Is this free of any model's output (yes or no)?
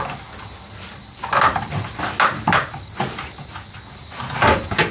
yes